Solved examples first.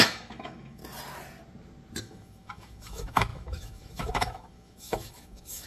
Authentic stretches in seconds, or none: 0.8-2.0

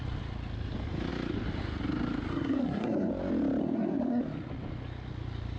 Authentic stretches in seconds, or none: 0.0-2.3; 3.1-3.6; 4.2-5.6

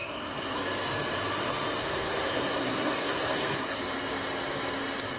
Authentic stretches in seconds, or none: 0.6-1.8; 3.8-5.2